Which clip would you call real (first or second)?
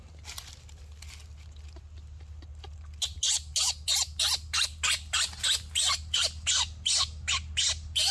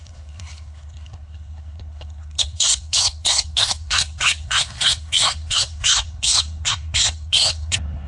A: first